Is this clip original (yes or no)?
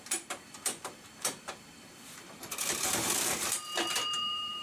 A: no